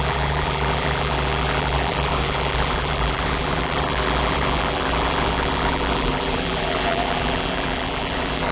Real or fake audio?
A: fake